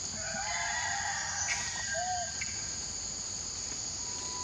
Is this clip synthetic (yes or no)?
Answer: yes